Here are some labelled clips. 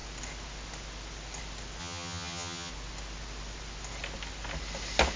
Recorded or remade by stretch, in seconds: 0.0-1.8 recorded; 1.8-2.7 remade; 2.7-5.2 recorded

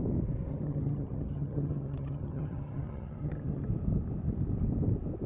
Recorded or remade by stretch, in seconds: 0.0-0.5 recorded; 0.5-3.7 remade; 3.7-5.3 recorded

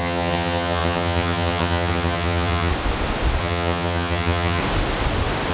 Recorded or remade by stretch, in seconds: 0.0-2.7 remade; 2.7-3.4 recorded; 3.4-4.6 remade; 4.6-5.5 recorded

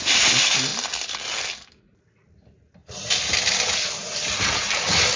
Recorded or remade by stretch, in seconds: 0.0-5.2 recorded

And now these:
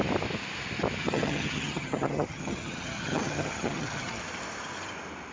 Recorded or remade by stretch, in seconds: 0.0-1.0 recorded; 1.0-4.2 remade; 4.2-5.3 recorded

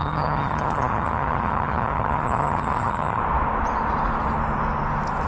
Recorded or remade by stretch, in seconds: 0.0-3.2 remade; 3.2-5.3 recorded

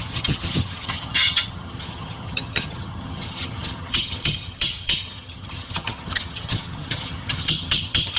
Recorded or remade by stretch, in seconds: 0.0-8.2 remade

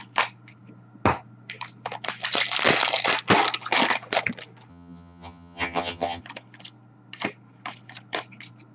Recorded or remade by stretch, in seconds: 0.0-4.7 recorded; 4.7-6.2 remade; 6.2-8.7 recorded